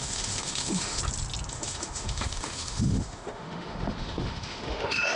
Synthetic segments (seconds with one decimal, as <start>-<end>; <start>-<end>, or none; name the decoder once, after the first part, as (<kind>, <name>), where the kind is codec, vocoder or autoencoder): 0.0-1.0 (autoencoder, DAC-VAE); 1.5-5.2